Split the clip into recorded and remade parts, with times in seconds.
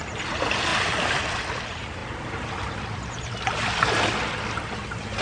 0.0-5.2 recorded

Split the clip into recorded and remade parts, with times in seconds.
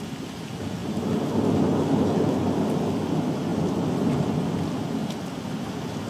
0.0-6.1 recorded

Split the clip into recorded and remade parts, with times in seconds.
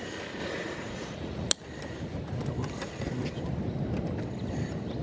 0.0-0.4 recorded; 0.4-1.5 remade; 1.5-5.0 recorded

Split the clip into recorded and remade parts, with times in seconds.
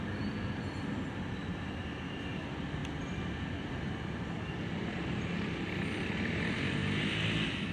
0.0-1.5 remade; 1.5-2.1 recorded; 2.1-2.8 remade; 2.8-4.9 recorded; 4.9-6.8 remade; 6.8-7.7 recorded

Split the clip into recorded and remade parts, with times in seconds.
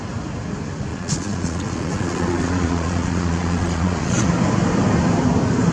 0.0-0.9 recorded; 0.9-4.3 remade; 4.3-5.7 recorded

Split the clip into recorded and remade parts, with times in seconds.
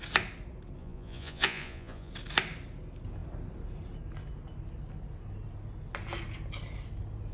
0.0-0.8 recorded; 0.8-2.1 remade; 2.1-7.3 recorded